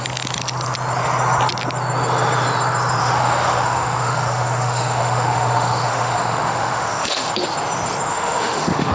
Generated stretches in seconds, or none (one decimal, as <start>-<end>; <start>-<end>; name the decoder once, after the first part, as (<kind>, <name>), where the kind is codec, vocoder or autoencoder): 3.0-7.3 (autoencoder, DAC-VAE); 8.1-8.9